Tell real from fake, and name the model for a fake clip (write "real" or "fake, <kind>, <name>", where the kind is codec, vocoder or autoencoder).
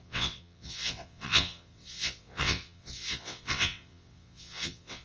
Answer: fake, vocoder, WaveNeXt